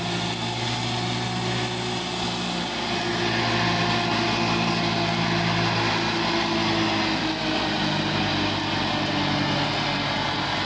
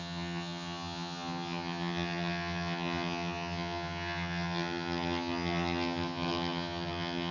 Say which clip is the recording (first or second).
first